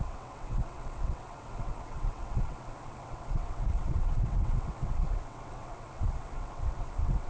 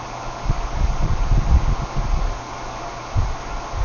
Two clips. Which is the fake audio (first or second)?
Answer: first